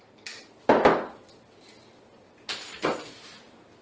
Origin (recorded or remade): recorded